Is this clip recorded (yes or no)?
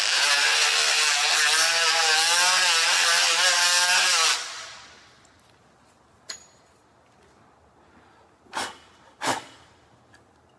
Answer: yes